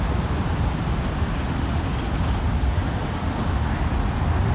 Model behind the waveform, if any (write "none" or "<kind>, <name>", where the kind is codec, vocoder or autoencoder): none